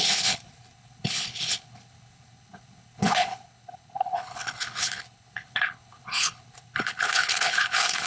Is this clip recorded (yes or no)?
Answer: no